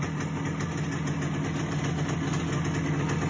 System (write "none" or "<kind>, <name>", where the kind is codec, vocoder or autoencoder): none